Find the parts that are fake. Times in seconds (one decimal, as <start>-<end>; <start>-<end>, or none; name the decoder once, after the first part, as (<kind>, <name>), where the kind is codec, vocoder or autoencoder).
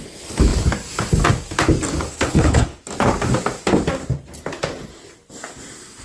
2.1-2.8 (codec, HILCodec)